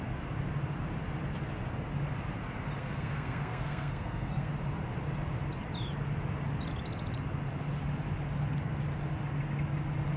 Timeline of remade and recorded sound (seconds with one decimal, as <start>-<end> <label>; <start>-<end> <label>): 0.0-2.8 recorded; 2.8-4.5 remade; 4.5-10.2 recorded